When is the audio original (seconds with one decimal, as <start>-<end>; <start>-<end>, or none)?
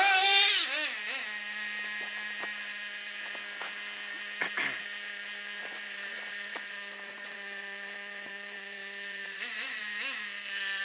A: 0.0-5.6; 9.8-10.8